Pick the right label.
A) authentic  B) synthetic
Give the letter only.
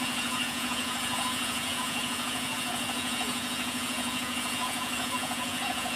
B